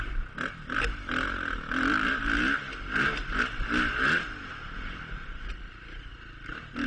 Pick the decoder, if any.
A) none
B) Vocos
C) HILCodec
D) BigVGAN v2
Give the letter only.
A